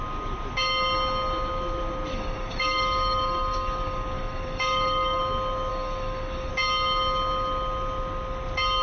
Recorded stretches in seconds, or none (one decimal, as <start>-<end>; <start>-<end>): 0.0-2.1; 5.2-5.7; 6.5-8.8